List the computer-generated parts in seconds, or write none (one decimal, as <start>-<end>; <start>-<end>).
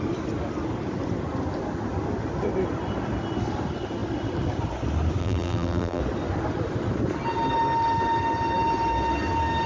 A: 5.2-6.0